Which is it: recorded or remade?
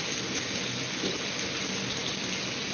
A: recorded